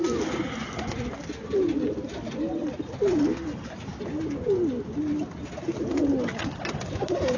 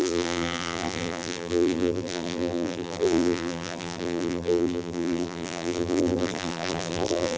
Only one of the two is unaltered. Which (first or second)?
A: first